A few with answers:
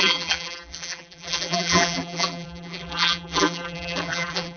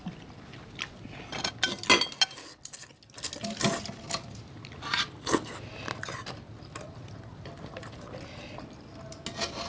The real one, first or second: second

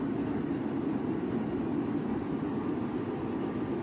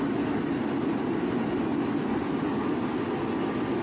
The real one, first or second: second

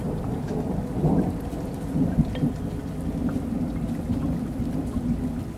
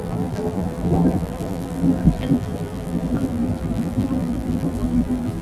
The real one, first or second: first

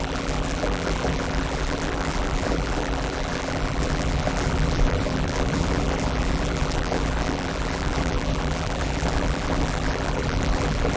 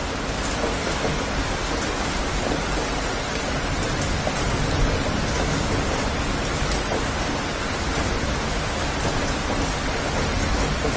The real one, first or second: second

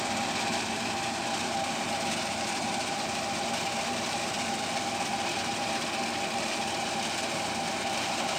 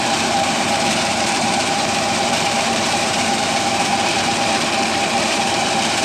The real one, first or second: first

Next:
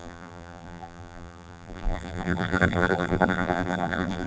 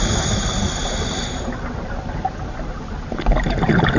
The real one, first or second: second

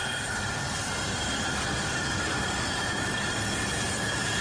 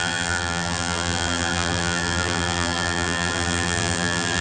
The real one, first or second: first